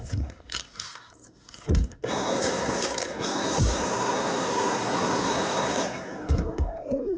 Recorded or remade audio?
remade